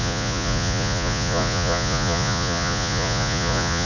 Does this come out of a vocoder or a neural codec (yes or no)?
yes